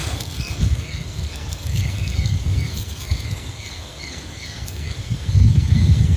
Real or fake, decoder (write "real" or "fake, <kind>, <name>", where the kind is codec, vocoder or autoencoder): fake, codec, SNAC